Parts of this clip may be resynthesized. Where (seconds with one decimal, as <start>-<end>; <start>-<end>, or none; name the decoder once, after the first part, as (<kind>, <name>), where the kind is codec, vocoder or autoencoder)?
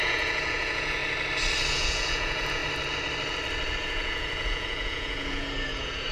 0.0-1.0 (vocoder, Vocos); 1.7-2.6; 3.8-6.1